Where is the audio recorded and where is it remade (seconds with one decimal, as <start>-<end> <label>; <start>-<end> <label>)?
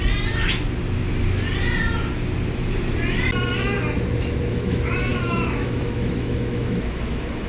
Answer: 0.0-4.5 recorded; 4.5-7.5 remade